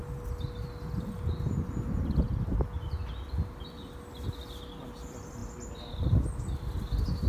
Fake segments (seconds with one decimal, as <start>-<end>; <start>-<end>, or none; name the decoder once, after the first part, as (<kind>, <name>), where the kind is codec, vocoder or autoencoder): none